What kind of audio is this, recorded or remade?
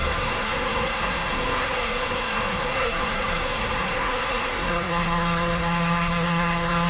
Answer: remade